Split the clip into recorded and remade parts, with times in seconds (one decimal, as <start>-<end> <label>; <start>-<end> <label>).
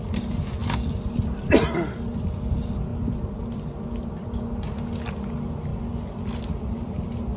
0.0-2.9 recorded; 2.9-3.7 remade; 3.7-5.7 recorded; 5.7-7.0 remade; 7.0-7.4 recorded